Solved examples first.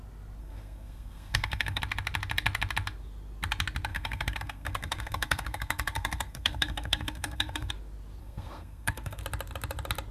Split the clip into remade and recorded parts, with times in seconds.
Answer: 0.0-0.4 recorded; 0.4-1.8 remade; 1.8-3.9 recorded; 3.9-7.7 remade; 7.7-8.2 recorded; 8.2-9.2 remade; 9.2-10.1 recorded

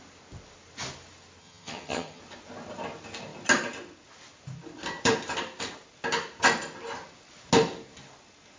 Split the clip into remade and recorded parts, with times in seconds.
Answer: 0.0-1.4 recorded; 1.4-2.2 remade; 2.2-8.6 recorded

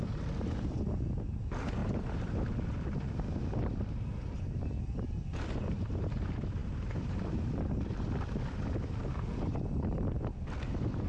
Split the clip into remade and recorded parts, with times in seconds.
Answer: 0.0-1.8 recorded; 1.8-2.5 remade; 2.5-6.6 recorded; 6.6-7.2 remade; 7.2-11.1 recorded

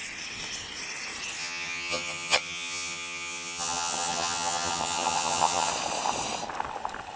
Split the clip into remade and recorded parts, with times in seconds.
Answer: 0.0-1.4 recorded; 1.4-5.7 remade; 5.7-7.2 recorded